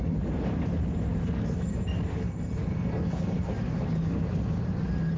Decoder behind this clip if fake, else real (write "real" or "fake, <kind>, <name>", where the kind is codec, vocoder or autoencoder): real